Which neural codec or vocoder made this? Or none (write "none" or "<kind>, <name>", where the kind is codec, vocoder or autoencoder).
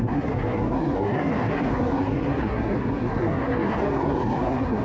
codec, SNAC